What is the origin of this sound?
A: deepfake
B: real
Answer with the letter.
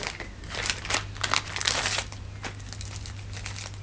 B